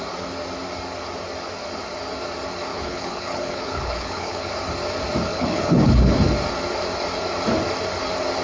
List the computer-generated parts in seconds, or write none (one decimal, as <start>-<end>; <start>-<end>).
2.7-4.5; 5.3-6.2